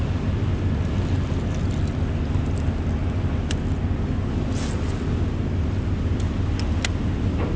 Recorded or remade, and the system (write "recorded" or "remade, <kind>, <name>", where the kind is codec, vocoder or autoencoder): recorded